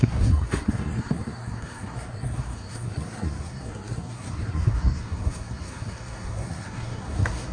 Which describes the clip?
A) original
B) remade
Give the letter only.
B